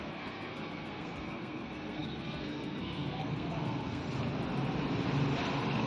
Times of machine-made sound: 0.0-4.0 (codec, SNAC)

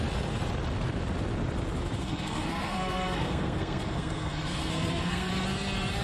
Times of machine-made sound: 2.0-5.3 (codec, SNAC)